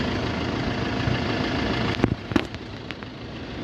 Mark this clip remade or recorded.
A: recorded